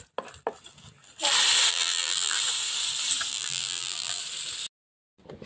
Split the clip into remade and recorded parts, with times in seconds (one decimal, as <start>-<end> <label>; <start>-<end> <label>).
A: 0.0-1.7 recorded; 1.7-2.4 remade; 2.4-3.3 recorded; 3.3-4.2 remade; 4.2-5.5 recorded